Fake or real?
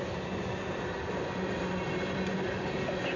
real